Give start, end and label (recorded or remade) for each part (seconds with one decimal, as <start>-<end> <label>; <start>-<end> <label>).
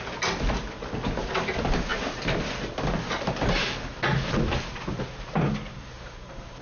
0.0-6.6 recorded